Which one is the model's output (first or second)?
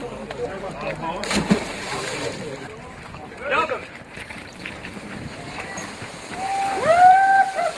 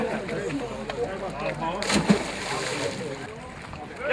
first